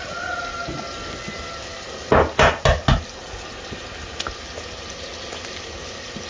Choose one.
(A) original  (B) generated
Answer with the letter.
A